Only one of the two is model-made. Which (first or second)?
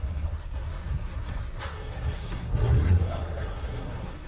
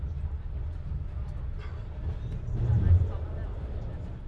first